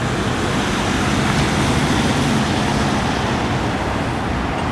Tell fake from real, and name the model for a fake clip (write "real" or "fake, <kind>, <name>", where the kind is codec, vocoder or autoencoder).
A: real